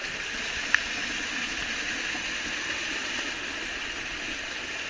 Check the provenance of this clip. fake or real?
real